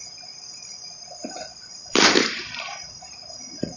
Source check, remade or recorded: remade